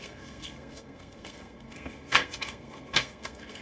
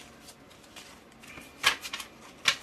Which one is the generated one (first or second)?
first